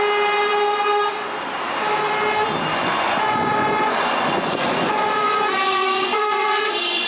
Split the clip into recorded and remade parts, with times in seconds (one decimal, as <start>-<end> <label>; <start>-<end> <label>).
0.0-2.7 recorded; 2.7-7.1 remade